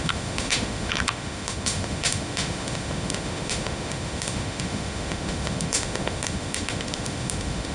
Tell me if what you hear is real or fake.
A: fake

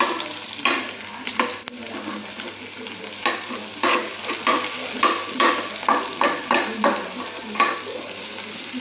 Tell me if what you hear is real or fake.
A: real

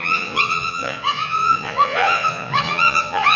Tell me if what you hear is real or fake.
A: fake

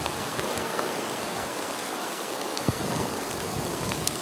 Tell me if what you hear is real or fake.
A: fake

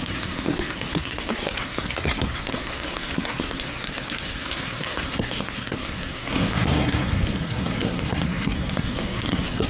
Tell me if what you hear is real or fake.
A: fake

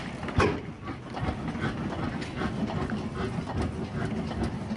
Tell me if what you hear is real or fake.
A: real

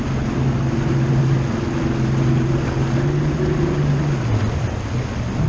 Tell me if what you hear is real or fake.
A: real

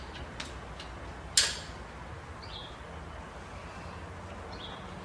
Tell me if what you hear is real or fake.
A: real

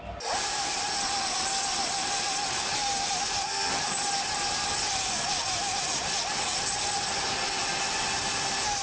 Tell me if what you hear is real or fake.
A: real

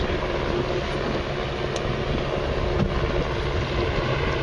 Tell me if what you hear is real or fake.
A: real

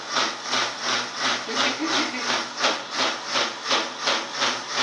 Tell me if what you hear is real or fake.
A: real